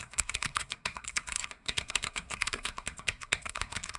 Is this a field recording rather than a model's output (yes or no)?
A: no